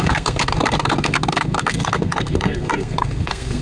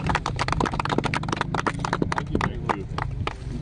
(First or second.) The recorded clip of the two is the second